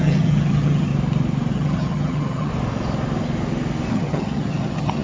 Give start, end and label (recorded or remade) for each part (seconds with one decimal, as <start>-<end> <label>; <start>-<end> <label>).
0.0-0.9 remade; 0.9-1.5 recorded; 1.5-2.5 remade; 2.5-3.9 recorded; 3.9-5.0 remade

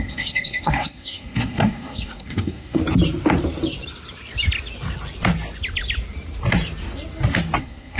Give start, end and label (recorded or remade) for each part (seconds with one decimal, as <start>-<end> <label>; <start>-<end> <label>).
0.0-2.8 remade; 2.8-7.6 recorded; 7.6-8.0 remade

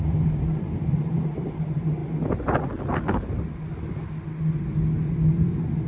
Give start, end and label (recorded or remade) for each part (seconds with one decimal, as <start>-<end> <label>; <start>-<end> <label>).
0.0-2.0 remade; 2.0-5.1 recorded; 5.1-5.9 remade

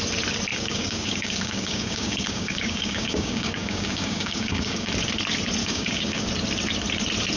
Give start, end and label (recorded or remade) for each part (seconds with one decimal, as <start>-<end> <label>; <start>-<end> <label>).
0.0-0.5 recorded; 0.5-4.9 remade; 4.9-5.6 recorded; 5.6-6.2 remade; 6.2-7.4 recorded